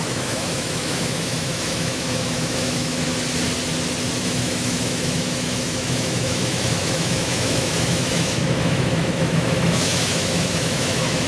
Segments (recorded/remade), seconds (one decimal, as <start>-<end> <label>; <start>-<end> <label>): 0.0-3.1 remade; 3.1-4.2 recorded; 4.2-11.3 remade